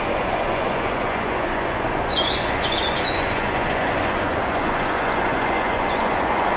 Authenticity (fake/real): fake